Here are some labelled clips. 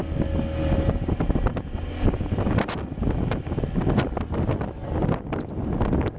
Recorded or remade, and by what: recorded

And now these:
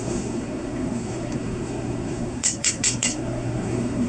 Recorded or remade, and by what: remade, codec, SNAC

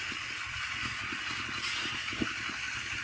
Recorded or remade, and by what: recorded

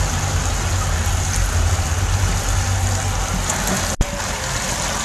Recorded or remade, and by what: recorded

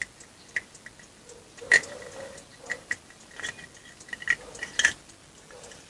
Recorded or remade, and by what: recorded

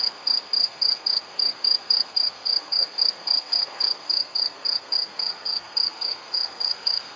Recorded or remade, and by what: remade, codec, SNAC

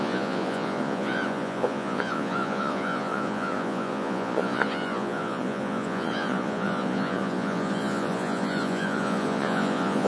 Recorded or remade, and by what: remade, vocoder, Vocos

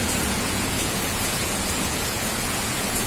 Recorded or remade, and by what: remade, vocoder, Vocos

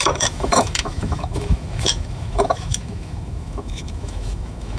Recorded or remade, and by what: remade, autoencoder, DAC-VAE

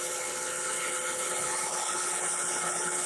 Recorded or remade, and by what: remade, codec, HILCodec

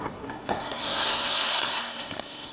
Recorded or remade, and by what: remade, codec, SNAC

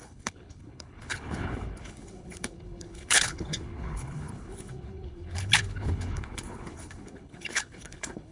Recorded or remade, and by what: remade, codec, HILCodec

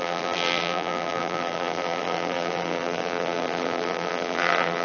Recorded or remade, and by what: remade, vocoder, BigVGAN v2